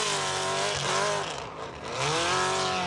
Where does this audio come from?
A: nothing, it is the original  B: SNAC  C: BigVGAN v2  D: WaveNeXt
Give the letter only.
A